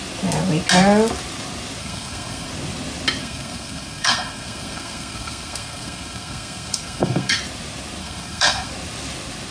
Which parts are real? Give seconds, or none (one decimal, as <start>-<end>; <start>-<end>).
0.0-1.8; 2.5-3.2; 7.4-8.0; 8.7-9.5